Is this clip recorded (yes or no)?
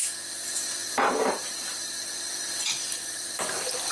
yes